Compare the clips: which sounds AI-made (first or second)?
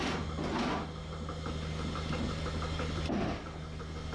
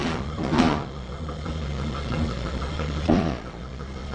second